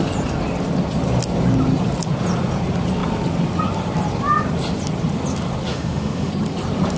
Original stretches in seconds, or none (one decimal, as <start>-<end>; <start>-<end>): 0.0-5.7; 6.3-7.0